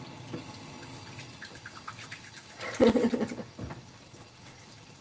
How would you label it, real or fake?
real